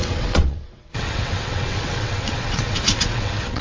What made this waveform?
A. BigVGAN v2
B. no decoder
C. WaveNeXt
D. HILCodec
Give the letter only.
C